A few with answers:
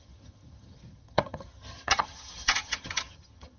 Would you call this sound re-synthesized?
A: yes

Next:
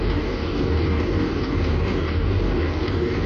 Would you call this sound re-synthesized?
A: yes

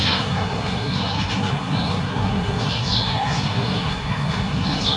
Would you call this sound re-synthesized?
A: yes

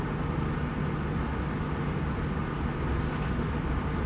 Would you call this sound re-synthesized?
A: no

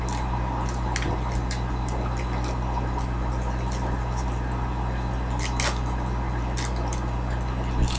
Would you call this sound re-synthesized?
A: no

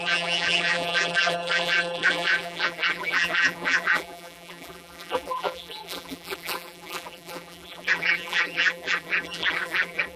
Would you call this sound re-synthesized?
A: yes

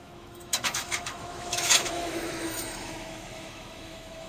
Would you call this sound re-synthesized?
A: yes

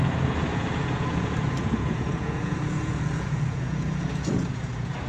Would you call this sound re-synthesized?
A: yes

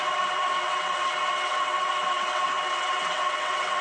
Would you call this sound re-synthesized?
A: yes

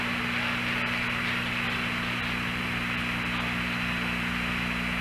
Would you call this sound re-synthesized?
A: no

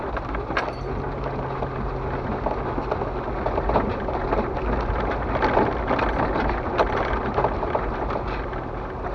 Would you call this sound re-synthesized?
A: no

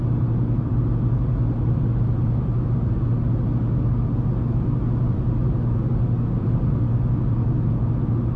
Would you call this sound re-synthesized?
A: no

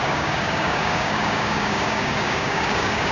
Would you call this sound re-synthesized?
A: yes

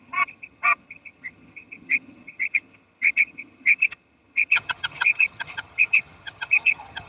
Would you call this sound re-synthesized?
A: yes